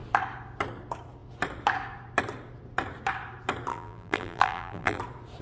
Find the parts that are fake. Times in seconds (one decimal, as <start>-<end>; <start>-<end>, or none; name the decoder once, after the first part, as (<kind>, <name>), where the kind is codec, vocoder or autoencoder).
3.7-5.0 (vocoder, BigVGAN v2)